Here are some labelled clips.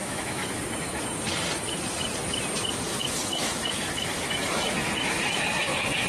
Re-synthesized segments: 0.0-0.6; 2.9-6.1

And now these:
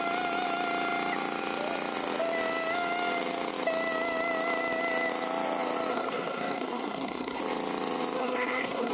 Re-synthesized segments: 5.9-7.4; 8.2-8.9

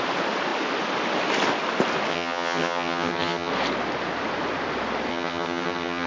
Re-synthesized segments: 2.1-3.5; 5.1-6.1